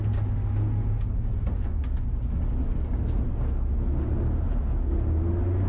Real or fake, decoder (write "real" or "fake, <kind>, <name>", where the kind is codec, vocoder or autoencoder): real